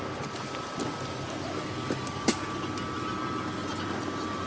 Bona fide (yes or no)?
yes